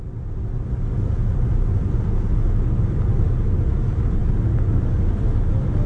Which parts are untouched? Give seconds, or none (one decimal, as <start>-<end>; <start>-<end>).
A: 0.0-5.9